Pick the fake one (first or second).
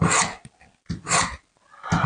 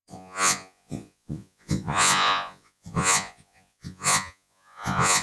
second